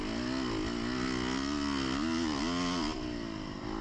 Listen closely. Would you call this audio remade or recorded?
recorded